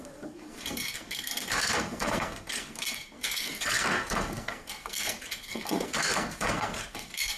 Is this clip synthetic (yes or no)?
yes